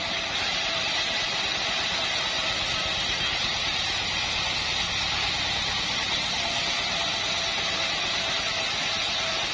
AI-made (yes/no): no